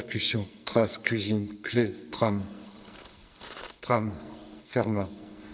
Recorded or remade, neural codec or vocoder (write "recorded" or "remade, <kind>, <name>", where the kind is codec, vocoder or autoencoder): remade, codec, SNAC